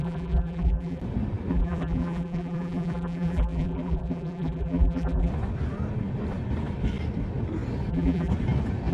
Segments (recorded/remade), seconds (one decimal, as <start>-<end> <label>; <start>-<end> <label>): 0.0-1.0 remade; 1.0-1.5 recorded; 1.5-5.3 remade; 5.3-7.9 recorded; 7.9-8.3 remade; 8.3-8.9 recorded